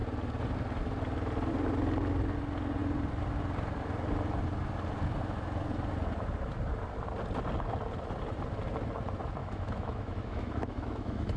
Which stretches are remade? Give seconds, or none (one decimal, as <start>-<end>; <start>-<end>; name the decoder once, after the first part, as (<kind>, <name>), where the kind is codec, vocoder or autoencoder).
9.4-11.4 (autoencoder, DAC-VAE)